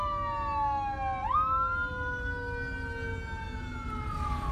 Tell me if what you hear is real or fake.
real